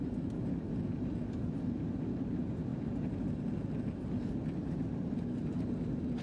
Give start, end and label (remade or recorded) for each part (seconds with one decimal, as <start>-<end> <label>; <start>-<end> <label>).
0.0-6.2 recorded